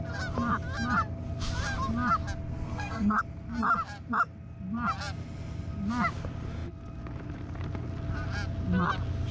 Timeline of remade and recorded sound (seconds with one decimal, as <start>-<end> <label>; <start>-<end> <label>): 0.0-2.5 recorded; 2.5-3.2 remade; 3.2-9.3 recorded